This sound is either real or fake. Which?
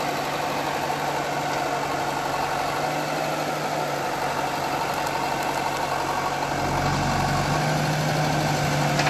real